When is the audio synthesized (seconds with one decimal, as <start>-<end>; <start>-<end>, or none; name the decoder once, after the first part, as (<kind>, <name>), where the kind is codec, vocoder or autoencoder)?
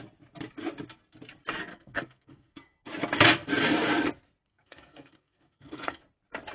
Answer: 1.7-2.9 (codec, SNAC); 4.5-6.0